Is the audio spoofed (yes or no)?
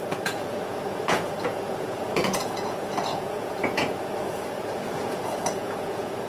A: yes